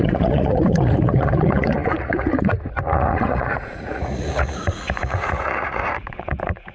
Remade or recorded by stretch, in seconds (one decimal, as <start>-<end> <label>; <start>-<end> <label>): 0.0-6.7 remade